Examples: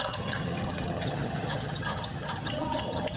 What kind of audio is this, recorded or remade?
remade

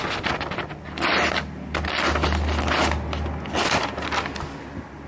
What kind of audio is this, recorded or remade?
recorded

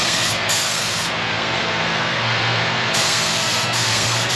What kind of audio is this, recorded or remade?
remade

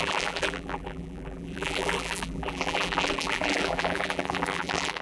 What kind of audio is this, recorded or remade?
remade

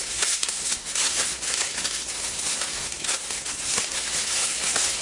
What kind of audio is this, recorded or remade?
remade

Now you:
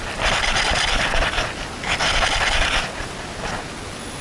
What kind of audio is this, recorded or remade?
recorded